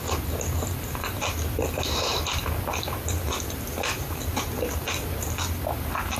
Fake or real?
real